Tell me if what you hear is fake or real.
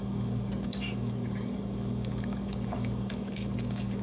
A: fake